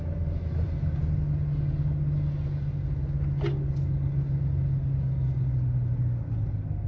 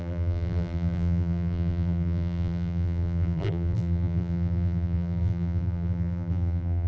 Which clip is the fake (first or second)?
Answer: second